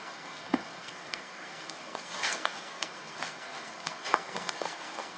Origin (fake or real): fake